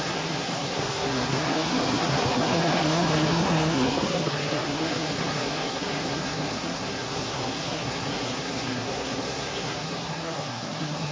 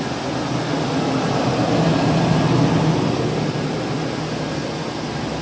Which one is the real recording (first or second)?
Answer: second